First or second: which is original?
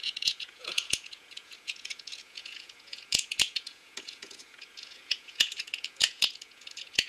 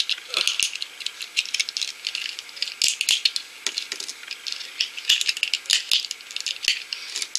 second